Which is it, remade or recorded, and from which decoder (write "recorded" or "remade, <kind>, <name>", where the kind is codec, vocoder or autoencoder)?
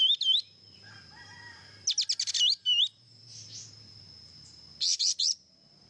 recorded